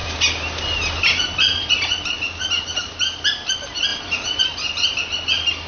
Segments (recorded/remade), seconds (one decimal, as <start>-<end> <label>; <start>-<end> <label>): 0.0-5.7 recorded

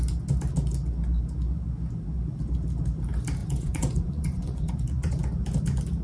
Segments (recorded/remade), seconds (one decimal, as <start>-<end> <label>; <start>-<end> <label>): 0.0-3.4 recorded; 3.4-4.7 remade; 4.7-6.0 recorded

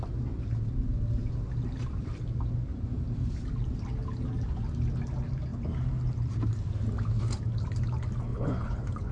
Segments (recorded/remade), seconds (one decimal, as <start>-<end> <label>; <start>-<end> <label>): 0.0-8.3 recorded; 8.3-9.1 remade

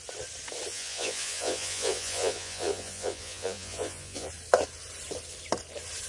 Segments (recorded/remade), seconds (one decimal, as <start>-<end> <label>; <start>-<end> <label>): 0.0-0.7 recorded; 0.7-4.3 remade; 4.3-6.1 recorded

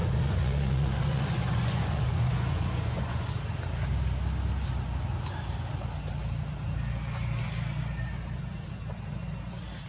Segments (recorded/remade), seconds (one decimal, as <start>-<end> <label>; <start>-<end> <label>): 0.0-3.3 remade; 3.3-9.9 recorded